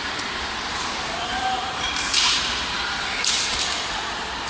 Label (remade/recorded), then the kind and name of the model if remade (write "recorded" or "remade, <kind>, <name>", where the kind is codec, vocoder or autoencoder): remade, vocoder, BigVGAN v2